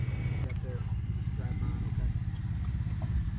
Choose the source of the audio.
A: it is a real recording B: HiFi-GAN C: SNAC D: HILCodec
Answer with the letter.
A